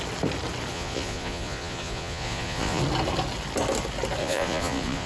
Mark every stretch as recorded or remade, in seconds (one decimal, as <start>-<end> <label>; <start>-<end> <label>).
0.0-0.7 recorded; 0.7-2.8 remade; 2.8-4.2 recorded; 4.2-5.1 remade